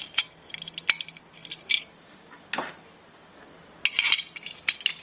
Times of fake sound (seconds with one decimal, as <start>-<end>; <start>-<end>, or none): none